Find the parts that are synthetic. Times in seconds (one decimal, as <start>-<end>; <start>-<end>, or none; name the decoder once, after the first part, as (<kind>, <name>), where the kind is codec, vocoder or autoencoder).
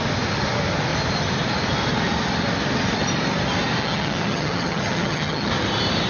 3.8-5.5 (vocoder, HiFi-GAN)